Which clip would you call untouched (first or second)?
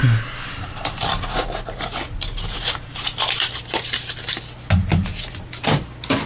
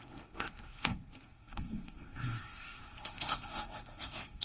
first